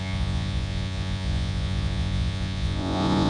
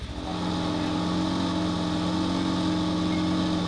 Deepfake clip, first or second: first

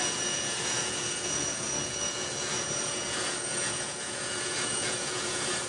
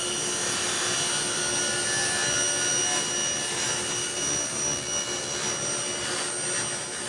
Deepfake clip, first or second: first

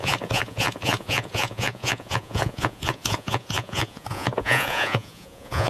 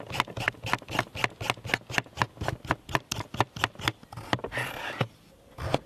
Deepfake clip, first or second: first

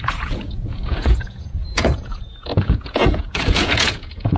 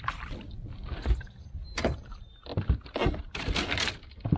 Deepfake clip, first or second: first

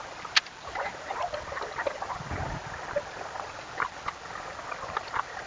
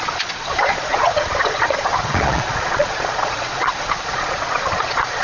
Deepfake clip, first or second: second